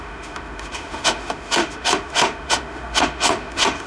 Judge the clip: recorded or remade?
remade